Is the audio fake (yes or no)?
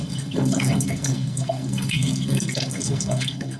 yes